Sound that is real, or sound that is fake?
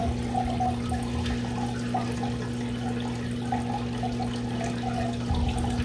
real